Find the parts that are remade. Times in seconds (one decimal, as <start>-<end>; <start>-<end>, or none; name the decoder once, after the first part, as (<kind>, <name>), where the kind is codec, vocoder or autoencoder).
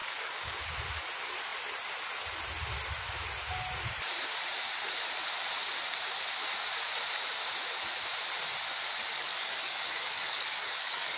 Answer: 0.0-0.6 (codec, DAC); 9.1-11.2